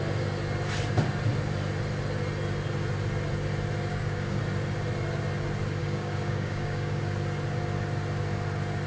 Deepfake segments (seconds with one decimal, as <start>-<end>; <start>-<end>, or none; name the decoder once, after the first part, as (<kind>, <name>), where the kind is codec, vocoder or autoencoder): 3.9-4.4 (codec, DAC); 5.8-7.0

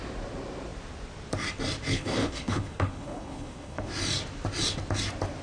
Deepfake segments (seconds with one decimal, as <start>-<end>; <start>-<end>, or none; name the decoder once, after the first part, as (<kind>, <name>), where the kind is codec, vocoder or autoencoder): 1.9-3.9 (codec, HILCodec)

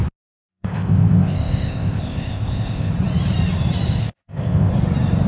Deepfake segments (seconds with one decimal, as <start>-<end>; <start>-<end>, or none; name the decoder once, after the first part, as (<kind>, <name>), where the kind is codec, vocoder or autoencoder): 0.5-2.9 (codec, ZipCodec); 4.0-4.7